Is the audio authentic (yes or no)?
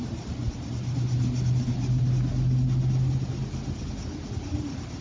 yes